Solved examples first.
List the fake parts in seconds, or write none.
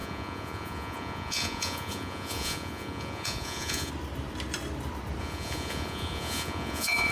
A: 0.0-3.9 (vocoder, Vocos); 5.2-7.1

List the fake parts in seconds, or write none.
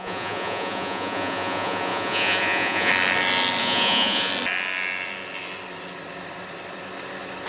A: 0.0-2.9 (vocoder, Vocos); 3.6-4.3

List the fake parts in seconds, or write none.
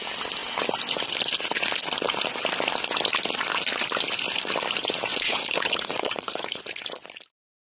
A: 5.1-6.6 (vocoder, Vocos)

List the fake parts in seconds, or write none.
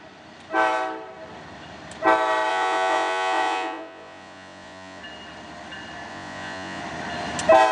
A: 2.5-5.0 (vocoder, Vocos); 6.1-6.8